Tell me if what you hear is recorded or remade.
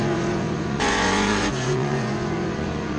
remade